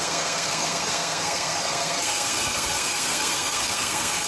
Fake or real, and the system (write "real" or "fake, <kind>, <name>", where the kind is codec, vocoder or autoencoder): fake, codec, SNAC